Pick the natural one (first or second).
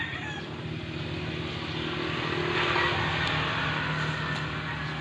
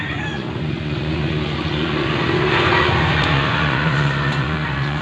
first